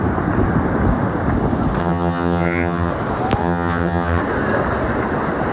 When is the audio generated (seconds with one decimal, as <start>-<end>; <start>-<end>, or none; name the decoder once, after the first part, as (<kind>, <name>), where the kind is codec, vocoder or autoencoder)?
1.8-2.9 (vocoder, HiFi-GAN); 3.4-4.2